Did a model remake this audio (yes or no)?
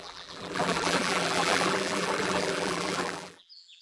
yes